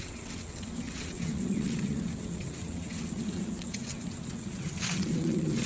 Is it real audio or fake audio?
fake